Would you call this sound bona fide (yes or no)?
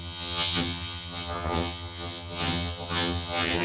no